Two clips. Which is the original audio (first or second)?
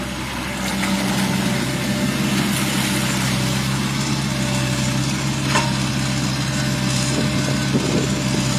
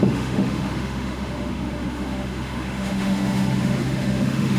first